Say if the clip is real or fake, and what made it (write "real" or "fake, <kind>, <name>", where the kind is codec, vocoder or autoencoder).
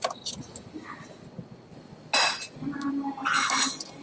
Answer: real